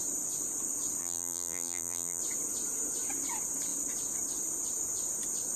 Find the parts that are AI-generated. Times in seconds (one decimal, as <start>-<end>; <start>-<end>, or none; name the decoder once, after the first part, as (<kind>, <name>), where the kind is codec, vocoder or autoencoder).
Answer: 1.0-2.2 (vocoder, BigVGAN v2)